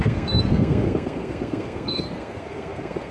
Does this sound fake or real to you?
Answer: fake